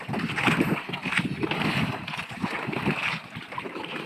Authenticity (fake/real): real